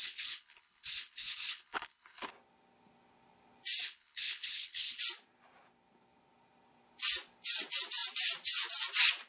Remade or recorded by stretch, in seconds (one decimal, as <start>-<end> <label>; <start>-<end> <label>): 0.0-2.3 remade; 2.3-3.8 recorded; 3.8-5.0 remade; 5.0-9.3 recorded